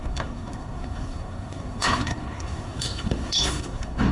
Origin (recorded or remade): remade